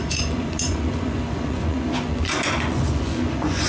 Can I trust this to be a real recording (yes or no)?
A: no